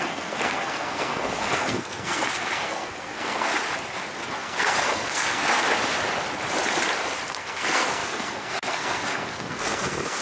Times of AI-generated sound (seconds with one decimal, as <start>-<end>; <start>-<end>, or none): 0.0-3.5; 4.2-5.6; 7.3-10.2